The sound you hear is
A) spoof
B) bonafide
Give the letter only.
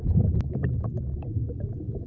B